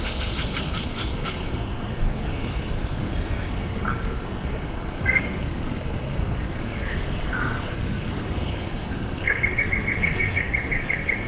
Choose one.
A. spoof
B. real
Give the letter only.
A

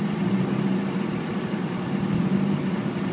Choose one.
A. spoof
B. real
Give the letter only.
B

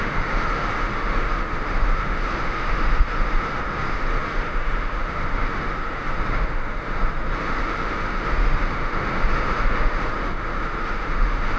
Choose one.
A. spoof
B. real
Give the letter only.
A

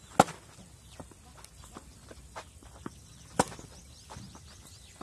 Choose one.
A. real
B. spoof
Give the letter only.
A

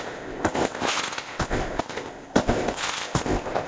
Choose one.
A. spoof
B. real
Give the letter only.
A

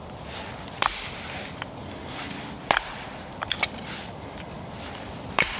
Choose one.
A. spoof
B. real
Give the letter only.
A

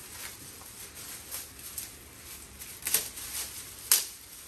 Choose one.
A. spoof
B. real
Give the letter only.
B